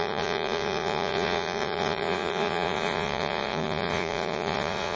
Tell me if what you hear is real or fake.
fake